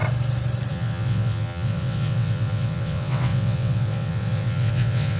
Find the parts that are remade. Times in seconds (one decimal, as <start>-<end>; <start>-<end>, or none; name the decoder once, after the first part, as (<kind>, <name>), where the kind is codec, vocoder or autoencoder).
0.7-5.2 (vocoder, WaveNeXt)